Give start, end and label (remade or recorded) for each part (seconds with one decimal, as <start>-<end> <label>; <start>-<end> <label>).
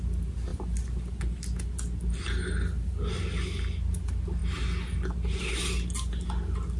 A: 0.0-6.8 recorded